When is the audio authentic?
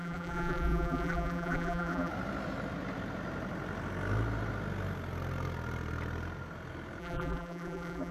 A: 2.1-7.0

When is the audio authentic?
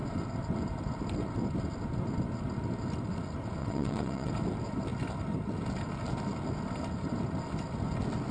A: 0.0-3.6; 4.3-8.3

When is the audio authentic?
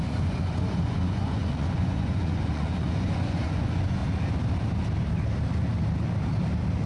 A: 4.0-6.9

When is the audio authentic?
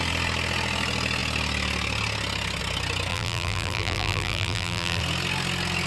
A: 0.0-3.1; 5.0-5.9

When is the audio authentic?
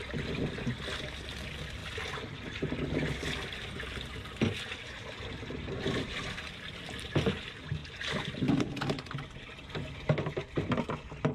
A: 0.0-11.3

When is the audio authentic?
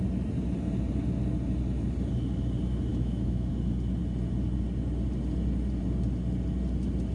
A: 0.0-2.9; 3.5-7.1